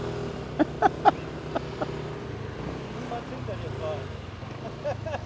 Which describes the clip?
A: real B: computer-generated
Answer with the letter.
A